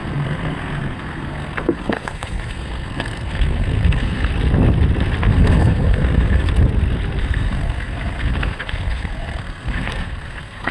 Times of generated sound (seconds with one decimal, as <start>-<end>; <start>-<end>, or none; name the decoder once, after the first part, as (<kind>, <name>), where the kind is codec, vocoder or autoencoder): 0.0-4.3 (codec, SNAC); 5.3-6.5; 7.2-10.7